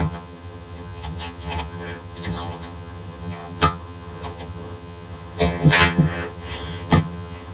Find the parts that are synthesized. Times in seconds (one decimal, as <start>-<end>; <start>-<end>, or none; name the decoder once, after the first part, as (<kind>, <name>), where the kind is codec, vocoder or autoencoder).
0.0-7.5 (vocoder, HiFi-GAN)